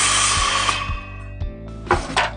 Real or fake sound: real